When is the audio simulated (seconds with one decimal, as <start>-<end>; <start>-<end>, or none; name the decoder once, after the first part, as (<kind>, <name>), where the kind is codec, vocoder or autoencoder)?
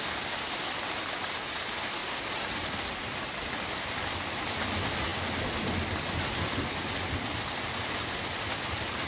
none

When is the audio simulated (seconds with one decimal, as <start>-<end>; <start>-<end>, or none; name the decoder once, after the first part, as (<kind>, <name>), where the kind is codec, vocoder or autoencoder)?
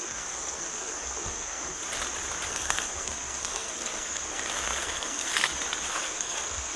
0.0-1.8 (codec, SNAC); 2.5-5.3; 5.9-6.8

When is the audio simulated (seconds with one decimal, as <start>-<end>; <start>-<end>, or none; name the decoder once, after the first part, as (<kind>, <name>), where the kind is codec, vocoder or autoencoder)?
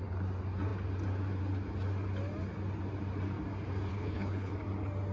3.9-4.5 (codec, HILCodec)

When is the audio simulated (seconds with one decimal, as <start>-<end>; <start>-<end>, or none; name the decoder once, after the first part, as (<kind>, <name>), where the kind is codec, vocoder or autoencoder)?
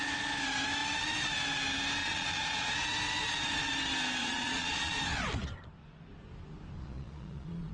2.0-2.7 (vocoder, Vocos); 4.2-5.0; 6.8-7.7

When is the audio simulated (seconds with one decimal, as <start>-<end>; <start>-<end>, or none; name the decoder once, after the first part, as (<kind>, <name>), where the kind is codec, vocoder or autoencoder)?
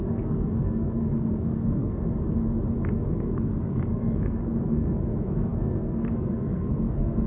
0.0-2.1 (codec, SNAC); 2.9-7.3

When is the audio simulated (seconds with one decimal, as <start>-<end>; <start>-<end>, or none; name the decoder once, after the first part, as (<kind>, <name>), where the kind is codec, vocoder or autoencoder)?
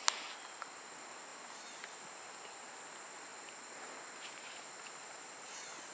none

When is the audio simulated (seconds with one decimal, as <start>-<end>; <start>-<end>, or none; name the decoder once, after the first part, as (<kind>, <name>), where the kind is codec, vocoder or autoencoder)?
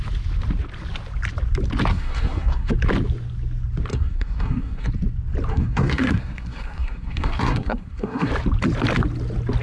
1.9-2.7 (codec, SNAC); 3.9-4.9; 5.5-8.3